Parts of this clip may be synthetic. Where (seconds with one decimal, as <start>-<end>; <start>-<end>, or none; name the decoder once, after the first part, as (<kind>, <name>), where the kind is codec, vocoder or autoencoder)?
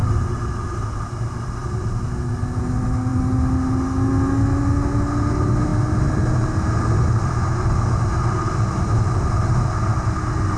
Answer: none